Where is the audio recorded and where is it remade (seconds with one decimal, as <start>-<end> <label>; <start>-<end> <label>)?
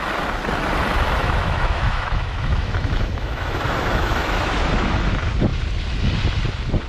0.0-1.2 recorded; 1.2-5.1 remade; 5.1-6.9 recorded